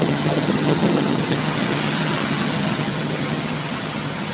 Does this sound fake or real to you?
fake